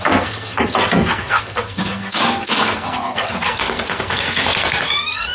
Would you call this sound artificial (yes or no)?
yes